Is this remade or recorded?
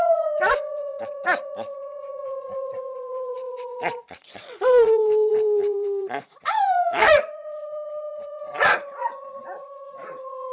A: remade